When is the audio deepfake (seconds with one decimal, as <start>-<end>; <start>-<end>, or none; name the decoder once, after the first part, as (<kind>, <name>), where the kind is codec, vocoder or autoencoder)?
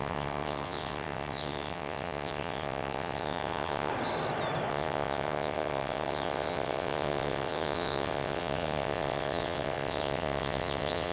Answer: 0.0-3.9 (vocoder, WaveNeXt); 4.7-11.1